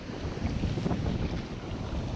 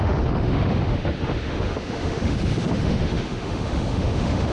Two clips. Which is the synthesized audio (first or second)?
second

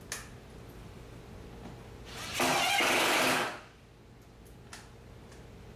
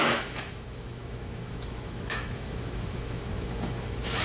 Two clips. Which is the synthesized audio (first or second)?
second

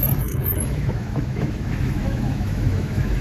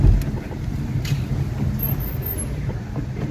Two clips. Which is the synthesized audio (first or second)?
first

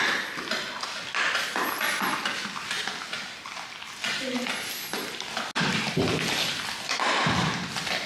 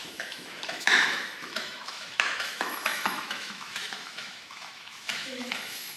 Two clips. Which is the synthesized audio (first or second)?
second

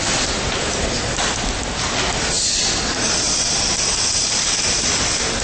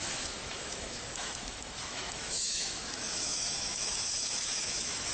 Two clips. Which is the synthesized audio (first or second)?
second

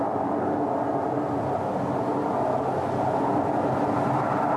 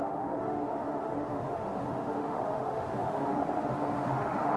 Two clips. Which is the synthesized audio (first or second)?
second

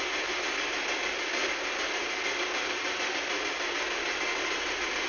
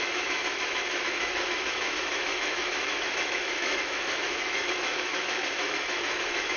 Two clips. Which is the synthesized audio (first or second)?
second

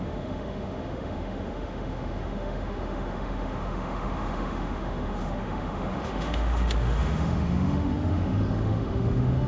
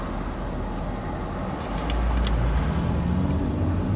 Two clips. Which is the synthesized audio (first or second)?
first